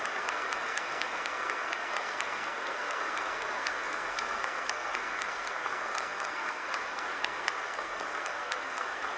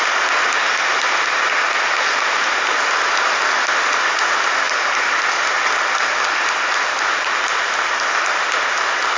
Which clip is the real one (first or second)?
second